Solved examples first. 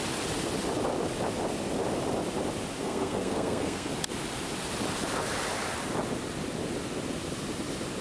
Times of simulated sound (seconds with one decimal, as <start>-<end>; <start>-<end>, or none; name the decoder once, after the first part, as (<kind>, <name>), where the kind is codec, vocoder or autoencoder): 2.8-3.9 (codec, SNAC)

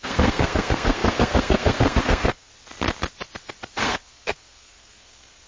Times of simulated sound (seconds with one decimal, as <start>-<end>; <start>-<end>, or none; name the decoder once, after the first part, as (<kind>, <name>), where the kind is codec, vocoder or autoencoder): 0.0-2.5 (codec, SNAC); 3.8-5.5

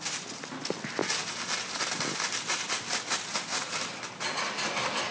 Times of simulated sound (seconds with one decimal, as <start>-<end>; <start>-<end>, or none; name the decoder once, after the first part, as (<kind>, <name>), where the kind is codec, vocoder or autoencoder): none

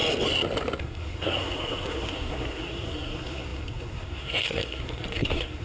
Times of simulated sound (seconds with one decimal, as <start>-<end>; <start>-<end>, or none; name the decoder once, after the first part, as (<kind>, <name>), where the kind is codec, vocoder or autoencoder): 0.8-5.6 (codec, SNAC)

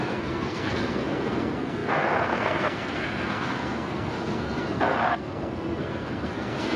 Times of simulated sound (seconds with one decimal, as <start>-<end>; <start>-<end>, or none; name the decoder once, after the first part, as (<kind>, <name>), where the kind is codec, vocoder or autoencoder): 0.0-6.8 (codec, SNAC)